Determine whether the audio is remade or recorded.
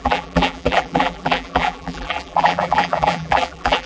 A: remade